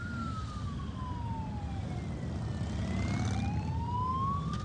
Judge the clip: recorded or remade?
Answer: recorded